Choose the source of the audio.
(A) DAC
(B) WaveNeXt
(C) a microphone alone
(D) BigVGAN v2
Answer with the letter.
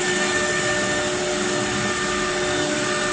C